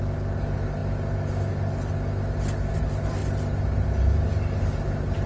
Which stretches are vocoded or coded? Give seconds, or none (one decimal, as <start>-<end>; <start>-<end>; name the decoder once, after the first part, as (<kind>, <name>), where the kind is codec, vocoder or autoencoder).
none